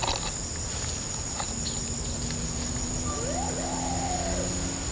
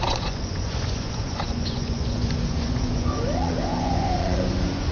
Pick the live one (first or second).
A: first